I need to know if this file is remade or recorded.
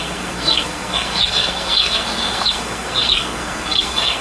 remade